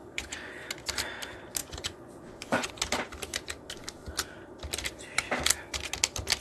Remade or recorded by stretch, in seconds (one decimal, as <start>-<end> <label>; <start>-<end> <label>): 0.0-0.5 remade; 0.5-1.6 recorded; 1.6-2.7 remade; 2.7-6.4 recorded